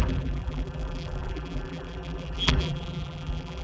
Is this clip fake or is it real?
fake